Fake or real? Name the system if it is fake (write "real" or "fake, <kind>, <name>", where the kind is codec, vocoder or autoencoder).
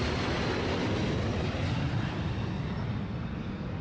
real